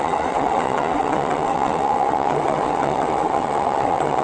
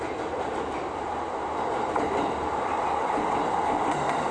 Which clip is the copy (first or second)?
first